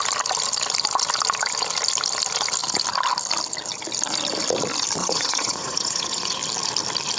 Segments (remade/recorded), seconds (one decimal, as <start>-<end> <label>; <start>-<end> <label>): 0.0-5.0 recorded; 5.0-6.4 remade; 6.4-7.2 recorded